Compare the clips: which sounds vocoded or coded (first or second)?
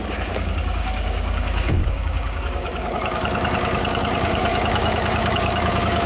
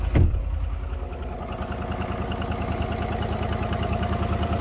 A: first